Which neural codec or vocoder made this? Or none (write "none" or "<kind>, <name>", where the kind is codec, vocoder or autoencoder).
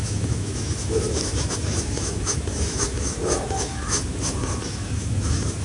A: autoencoder, DAC-VAE